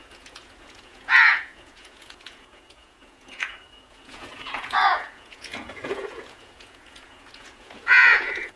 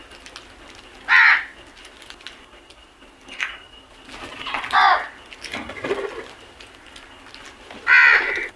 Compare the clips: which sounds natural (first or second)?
second